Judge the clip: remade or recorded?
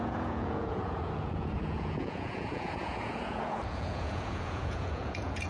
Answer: remade